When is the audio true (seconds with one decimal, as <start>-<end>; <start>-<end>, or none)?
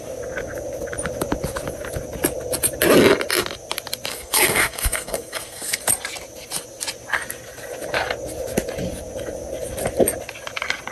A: 0.0-4.1; 5.8-10.9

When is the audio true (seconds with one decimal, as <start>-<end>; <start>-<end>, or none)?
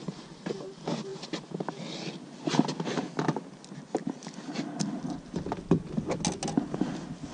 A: 0.0-7.3